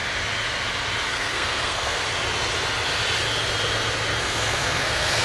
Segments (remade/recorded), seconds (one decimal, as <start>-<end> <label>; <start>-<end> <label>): 0.0-1.1 recorded; 1.1-2.0 remade; 2.0-4.2 recorded; 4.2-5.2 remade